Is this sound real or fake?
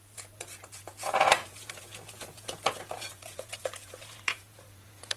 fake